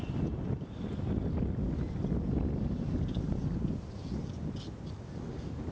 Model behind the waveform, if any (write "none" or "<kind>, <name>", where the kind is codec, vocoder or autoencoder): none